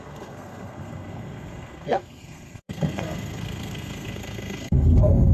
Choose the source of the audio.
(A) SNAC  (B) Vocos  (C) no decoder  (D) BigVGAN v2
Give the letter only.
A